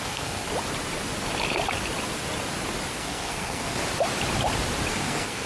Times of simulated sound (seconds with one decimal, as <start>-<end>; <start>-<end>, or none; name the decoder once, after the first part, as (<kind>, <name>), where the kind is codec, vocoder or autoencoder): 0.0-0.5 (codec, SNAC); 2.9-3.8; 4.9-5.5